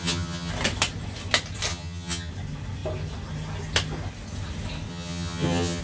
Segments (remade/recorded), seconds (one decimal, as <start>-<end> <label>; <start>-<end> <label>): 0.0-0.5 remade; 0.5-1.7 recorded; 1.7-2.3 remade; 2.3-4.9 recorded; 4.9-5.8 remade